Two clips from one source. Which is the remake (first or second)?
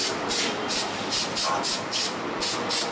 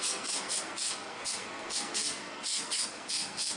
second